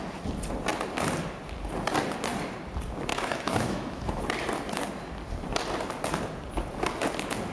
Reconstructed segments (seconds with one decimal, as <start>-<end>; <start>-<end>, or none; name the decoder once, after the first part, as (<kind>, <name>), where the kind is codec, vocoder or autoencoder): 3.1-4.2 (autoencoder, DAC-VAE)